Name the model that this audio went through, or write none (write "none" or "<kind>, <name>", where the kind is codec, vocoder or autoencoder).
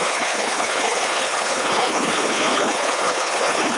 codec, HILCodec